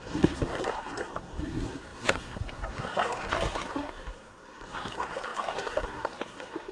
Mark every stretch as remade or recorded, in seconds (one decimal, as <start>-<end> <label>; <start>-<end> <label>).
0.0-6.7 remade